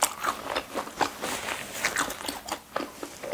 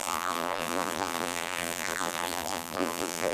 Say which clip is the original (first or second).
first